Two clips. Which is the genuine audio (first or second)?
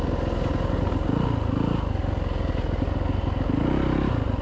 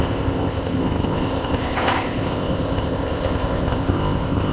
first